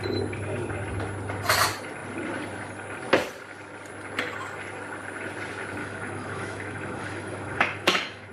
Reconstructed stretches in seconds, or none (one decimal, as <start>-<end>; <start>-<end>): 5.8-8.3